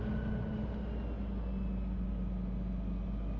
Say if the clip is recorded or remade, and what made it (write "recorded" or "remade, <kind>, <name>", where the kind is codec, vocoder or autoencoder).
recorded